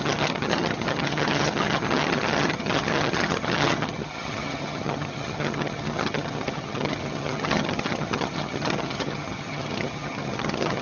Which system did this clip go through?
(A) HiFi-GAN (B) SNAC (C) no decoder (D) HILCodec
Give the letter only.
A